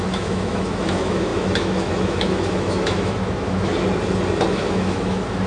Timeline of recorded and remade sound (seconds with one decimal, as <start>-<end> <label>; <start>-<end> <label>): 0.0-3.7 remade; 3.7-4.5 recorded; 4.5-5.5 remade